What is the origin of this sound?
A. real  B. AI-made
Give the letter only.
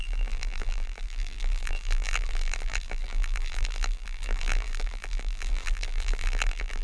B